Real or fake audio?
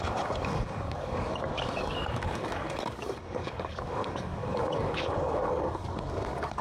fake